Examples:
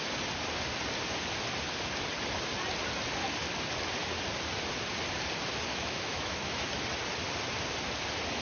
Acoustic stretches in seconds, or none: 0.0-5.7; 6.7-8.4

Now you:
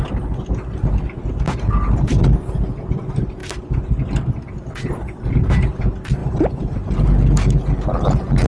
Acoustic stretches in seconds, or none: 0.0-8.5

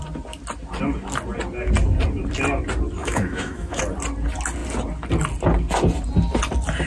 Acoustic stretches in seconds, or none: 0.0-3.0; 3.8-6.9

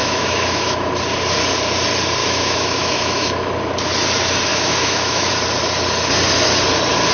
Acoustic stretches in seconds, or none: 0.9-2.2; 3.5-4.5; 5.3-7.1

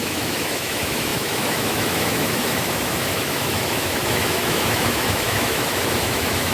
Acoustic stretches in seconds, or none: none